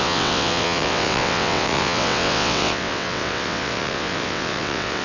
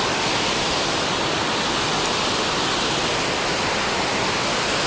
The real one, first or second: second